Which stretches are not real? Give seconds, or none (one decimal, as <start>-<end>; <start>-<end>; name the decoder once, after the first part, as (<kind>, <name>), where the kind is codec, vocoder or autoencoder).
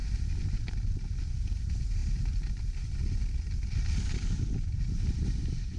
none